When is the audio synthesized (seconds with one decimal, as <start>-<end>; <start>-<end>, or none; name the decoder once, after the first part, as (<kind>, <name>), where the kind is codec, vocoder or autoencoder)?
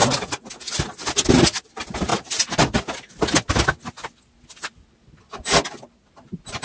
none